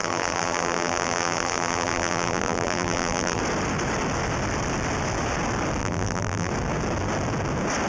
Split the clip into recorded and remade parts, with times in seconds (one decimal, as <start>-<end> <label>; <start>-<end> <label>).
0.0-3.4 remade; 3.4-5.8 recorded; 5.8-6.5 remade; 6.5-7.9 recorded